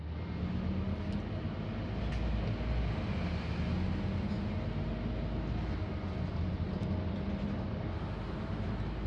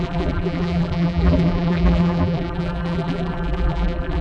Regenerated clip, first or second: second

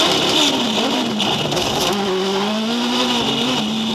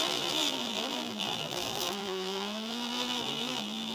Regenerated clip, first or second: second